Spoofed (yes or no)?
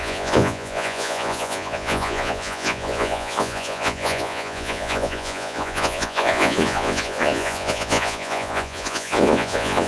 yes